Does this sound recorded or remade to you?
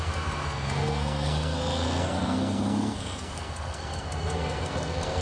remade